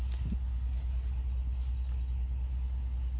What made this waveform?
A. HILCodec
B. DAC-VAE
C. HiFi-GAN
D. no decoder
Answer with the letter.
D